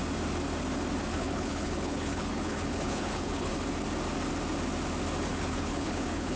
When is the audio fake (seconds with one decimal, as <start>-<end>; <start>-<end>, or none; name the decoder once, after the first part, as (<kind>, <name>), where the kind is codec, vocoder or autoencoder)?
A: 1.1-3.5 (codec, HILCodec); 5.3-6.4